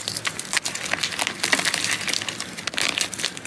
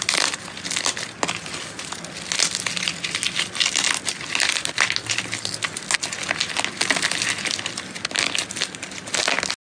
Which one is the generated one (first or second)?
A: first